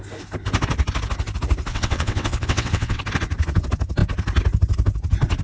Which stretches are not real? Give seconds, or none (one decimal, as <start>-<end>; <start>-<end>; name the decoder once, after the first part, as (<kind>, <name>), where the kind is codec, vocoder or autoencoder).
1.7-3.0 (vocoder, WaveNeXt)